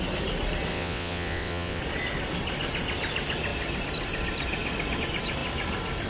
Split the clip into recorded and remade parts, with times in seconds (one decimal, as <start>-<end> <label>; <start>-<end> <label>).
0.0-0.7 recorded; 0.7-1.8 remade; 1.8-6.1 recorded